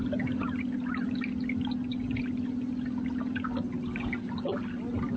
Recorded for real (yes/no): yes